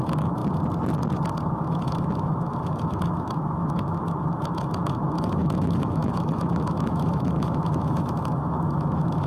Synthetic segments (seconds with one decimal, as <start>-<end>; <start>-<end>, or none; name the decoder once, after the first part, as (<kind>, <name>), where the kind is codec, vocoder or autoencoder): 0.0-0.4 (autoencoder, DAC-VAE); 1.5-9.3